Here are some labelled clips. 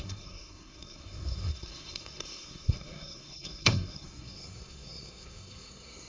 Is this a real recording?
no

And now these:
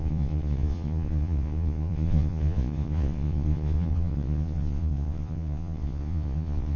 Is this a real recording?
no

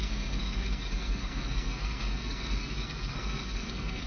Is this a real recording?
no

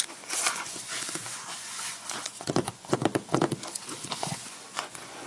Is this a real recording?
no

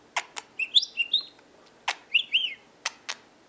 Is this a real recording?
yes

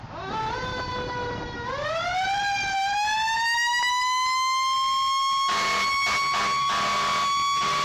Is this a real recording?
yes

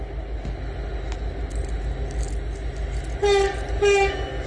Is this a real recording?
yes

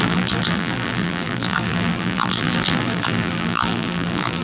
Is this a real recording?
no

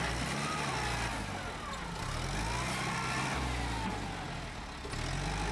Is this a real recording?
yes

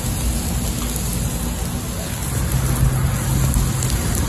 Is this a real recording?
yes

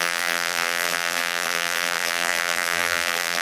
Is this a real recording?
no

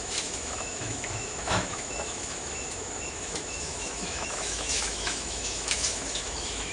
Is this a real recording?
no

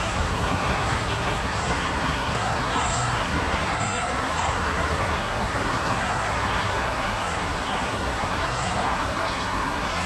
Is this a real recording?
no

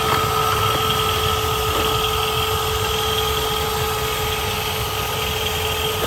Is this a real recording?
yes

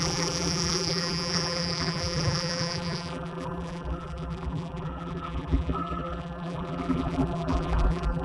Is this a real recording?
no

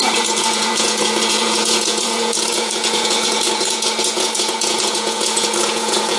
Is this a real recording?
no